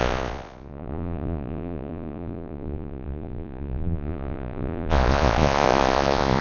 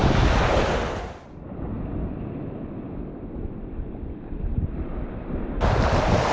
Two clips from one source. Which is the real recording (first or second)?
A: second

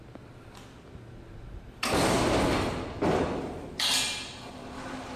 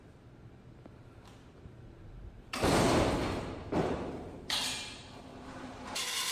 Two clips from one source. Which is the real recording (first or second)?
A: first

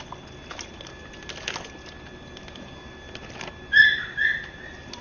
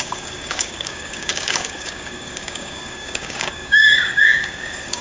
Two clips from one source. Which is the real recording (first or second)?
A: first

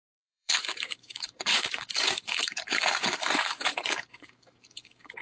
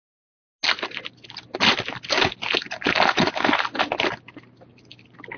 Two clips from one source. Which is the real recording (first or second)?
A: second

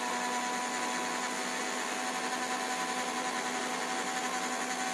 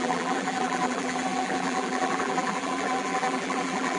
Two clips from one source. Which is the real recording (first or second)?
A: first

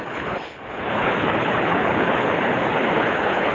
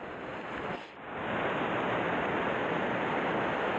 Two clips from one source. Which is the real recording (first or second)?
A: second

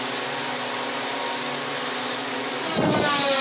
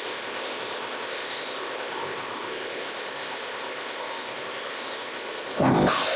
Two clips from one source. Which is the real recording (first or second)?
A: first